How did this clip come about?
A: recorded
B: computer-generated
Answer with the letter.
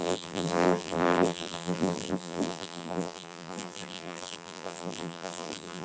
B